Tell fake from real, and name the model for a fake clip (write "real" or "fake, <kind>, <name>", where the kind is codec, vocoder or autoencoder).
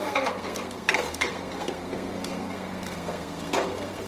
fake, codec, SNAC